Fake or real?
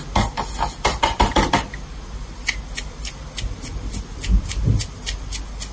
real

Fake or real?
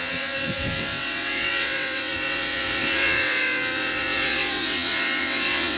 fake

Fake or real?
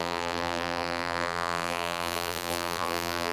fake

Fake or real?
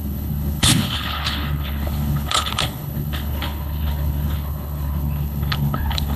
fake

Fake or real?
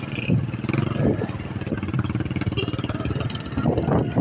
real